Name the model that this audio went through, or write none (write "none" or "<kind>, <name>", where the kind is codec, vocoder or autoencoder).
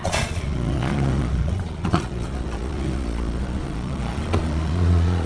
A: vocoder, Vocos